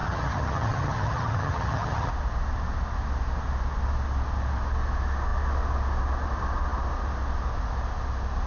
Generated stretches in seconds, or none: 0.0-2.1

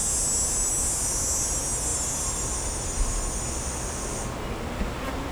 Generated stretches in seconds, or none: none

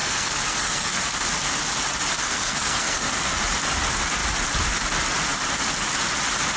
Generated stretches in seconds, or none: 0.0-1.0; 2.2-3.4

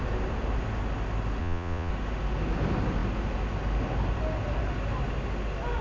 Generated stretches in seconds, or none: 1.4-1.9

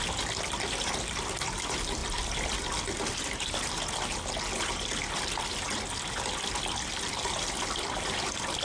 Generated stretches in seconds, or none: 0.0-2.0; 5.4-8.6

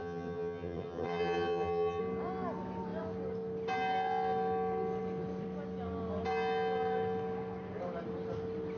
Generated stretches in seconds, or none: 0.0-2.0

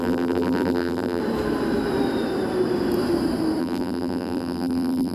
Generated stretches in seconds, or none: 0.0-1.2; 3.6-5.1